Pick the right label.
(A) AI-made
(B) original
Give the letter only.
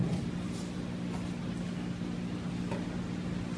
B